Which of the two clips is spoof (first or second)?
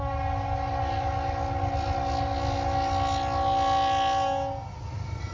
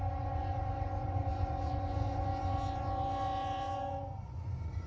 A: second